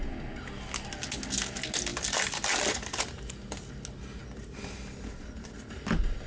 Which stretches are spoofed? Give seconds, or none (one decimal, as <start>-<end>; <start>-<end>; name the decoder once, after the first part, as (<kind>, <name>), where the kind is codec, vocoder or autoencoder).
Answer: 1.9-3.3 (vocoder, BigVGAN v2)